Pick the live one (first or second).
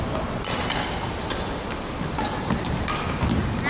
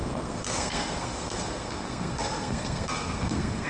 first